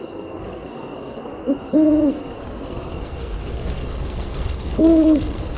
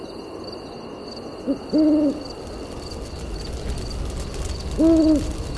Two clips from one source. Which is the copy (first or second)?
first